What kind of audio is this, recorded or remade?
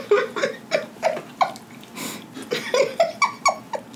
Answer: recorded